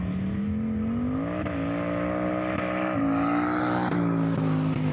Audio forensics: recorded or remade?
recorded